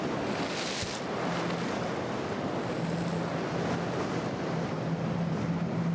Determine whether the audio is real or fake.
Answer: real